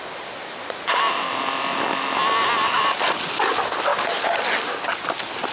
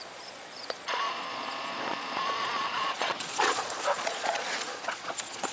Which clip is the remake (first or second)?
second